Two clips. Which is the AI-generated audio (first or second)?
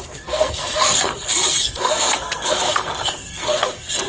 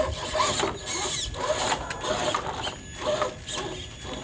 first